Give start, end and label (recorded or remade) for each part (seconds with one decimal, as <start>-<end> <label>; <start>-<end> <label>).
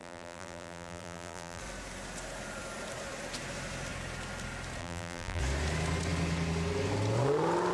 0.0-1.6 remade; 1.6-4.8 recorded; 4.8-5.4 remade; 5.4-7.7 recorded